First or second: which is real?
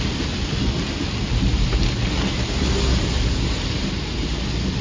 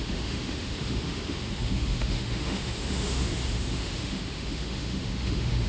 first